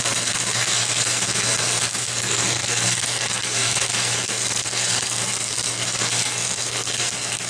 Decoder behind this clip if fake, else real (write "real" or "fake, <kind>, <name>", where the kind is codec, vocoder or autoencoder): fake, codec, SNAC